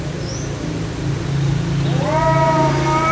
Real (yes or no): yes